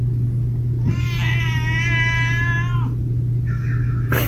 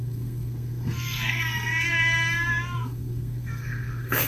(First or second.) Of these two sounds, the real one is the first